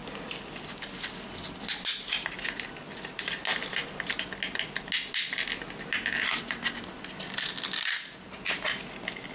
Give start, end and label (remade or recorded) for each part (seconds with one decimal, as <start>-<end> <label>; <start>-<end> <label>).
0.0-9.3 recorded